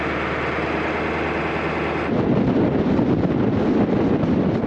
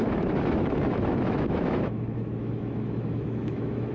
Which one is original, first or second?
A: first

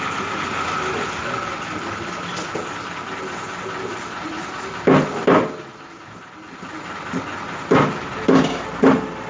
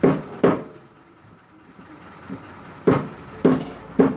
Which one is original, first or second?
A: first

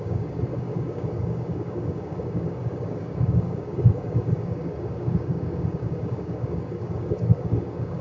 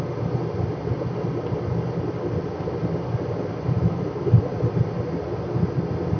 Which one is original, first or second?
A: second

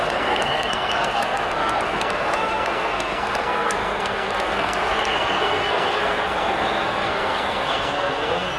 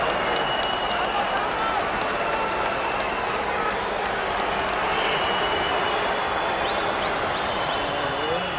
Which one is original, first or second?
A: second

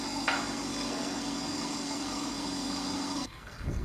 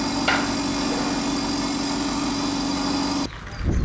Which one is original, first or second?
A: second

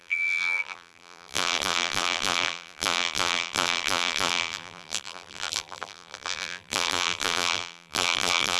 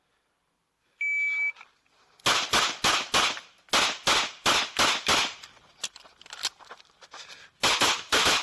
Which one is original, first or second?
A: second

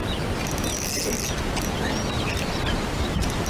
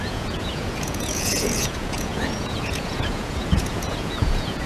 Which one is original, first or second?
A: first